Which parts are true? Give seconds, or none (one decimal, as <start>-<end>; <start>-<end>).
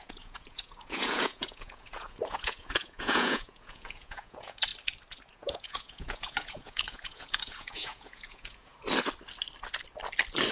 4.7-5.3; 8.7-10.5